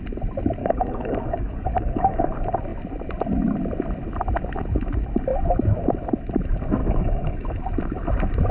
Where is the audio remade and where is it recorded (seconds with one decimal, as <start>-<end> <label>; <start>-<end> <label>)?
0.0-0.6 recorded; 0.6-2.3 remade; 2.3-6.8 recorded; 6.8-7.6 remade; 7.6-8.5 recorded